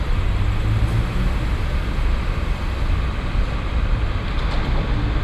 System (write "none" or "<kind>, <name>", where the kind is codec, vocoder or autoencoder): none